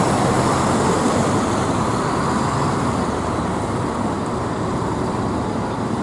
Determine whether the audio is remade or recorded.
recorded